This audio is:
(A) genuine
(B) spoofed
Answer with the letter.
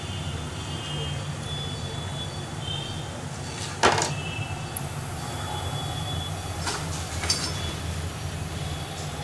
A